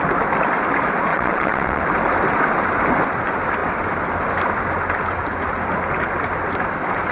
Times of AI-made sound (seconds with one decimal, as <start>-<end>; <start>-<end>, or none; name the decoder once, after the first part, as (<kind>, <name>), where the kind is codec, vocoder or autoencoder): 1.1-1.8 (vocoder, WaveNeXt)